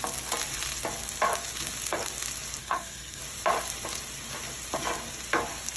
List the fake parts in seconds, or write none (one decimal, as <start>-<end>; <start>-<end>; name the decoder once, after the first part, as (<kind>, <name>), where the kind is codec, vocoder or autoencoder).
2.6-3.2 (codec, SNAC)